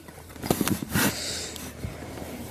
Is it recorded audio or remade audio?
remade